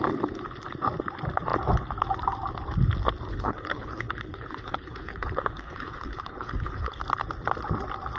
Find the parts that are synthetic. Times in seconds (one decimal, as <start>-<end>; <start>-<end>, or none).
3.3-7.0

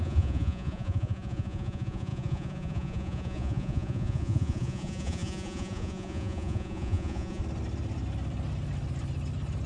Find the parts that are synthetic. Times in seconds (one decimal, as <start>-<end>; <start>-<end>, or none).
0.0-7.4

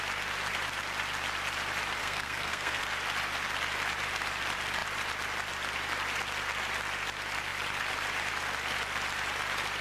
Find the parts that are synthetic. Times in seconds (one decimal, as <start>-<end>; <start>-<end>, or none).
2.0-2.8